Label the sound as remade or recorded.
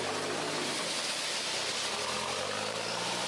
recorded